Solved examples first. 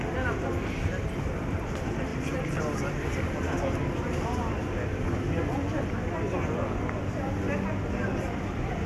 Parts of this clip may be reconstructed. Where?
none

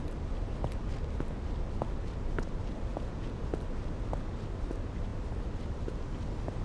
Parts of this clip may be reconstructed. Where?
2.9-3.4 (vocoder, Vocos)

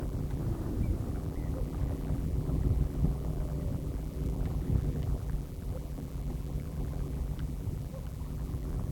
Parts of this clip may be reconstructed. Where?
0.0-0.4 (vocoder, BigVGAN v2); 1.1-8.9

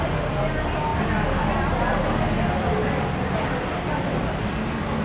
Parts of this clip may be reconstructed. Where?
none

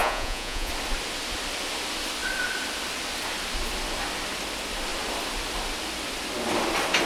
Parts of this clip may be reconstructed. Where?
0.0-0.7 (vocoder, Vocos)

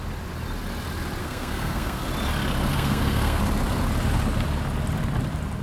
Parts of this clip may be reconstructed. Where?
1.2-2.1 (codec, SNAC); 2.7-3.4